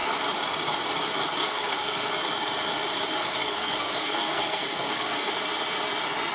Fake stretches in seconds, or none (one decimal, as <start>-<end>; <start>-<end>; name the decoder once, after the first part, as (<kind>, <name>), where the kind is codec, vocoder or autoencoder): 1.4-2.1 (codec, SNAC); 3.2-5.3